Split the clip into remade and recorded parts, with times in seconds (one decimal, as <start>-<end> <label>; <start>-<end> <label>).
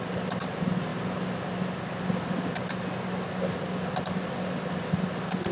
0.0-5.5 recorded